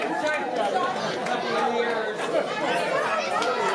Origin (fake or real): real